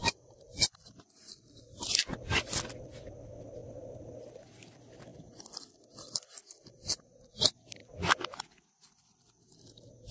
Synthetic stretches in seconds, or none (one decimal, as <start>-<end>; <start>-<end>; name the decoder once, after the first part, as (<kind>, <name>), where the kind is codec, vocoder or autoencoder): 0.0-2.9 (vocoder, BigVGAN v2); 3.6-4.3; 5.1-5.6